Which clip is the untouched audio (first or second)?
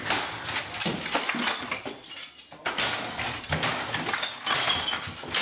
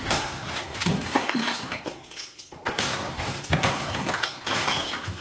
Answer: first